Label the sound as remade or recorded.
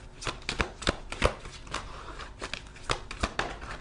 recorded